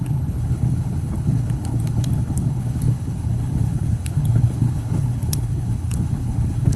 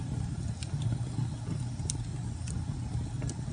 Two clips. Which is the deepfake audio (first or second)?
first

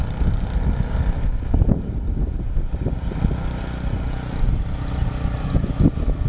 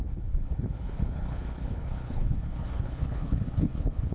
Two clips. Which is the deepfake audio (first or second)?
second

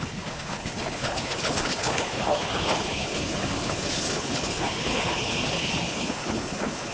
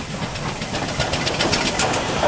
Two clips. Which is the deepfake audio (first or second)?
first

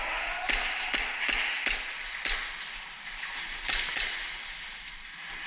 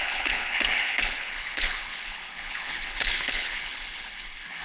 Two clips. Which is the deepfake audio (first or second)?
second